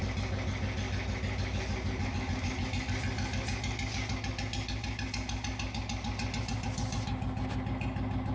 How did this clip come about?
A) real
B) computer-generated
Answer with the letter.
A